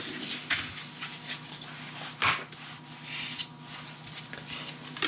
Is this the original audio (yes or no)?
yes